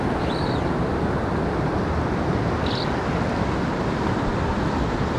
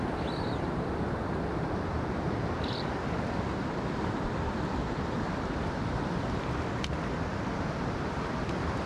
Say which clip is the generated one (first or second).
second